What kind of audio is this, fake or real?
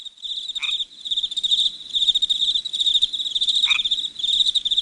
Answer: real